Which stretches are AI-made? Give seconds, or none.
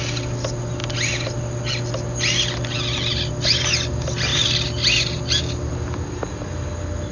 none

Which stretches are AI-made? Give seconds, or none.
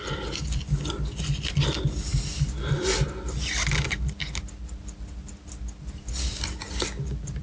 none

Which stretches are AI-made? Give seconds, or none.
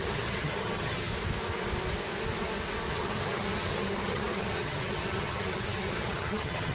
0.0-1.1 (vocoder, HiFi-GAN); 2.9-6.7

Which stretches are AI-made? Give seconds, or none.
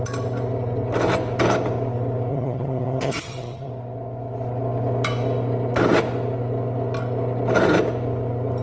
2.3-3.7 (vocoder, HiFi-GAN)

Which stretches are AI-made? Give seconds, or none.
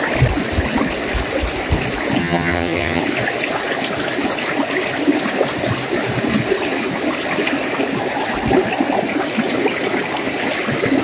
2.2-3.0 (vocoder, HiFi-GAN)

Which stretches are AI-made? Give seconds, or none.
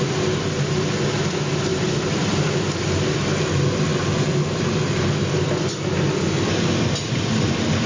none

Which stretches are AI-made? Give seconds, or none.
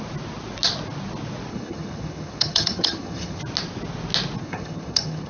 1.5-3.4 (vocoder, HiFi-GAN); 4.4-5.3